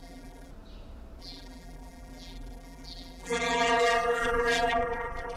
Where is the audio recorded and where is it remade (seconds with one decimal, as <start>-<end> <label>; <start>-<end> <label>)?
0.0-0.5 remade; 0.5-1.2 recorded; 1.2-5.4 remade